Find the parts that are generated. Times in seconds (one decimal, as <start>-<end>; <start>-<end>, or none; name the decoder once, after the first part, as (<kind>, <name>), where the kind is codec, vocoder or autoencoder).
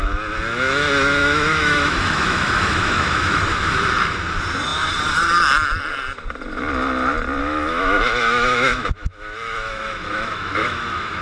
1.2-3.4 (autoencoder, DAC-VAE); 7.4-11.2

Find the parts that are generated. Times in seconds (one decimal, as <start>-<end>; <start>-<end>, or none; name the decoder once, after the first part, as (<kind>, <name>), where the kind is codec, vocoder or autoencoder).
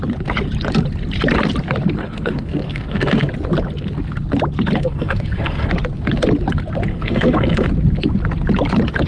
2.0-3.3 (codec, SNAC); 4.8-5.7; 6.9-7.7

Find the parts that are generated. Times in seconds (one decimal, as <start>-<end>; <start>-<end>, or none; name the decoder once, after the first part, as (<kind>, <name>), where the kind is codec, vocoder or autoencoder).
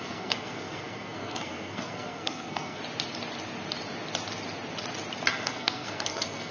0.0-2.8 (codec, SNAC); 5.3-6.5